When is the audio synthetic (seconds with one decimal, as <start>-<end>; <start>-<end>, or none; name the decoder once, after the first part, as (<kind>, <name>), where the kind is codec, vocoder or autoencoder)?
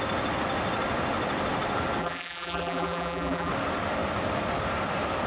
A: 2.0-3.5 (vocoder, BigVGAN v2)